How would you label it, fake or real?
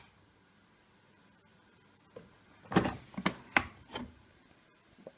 real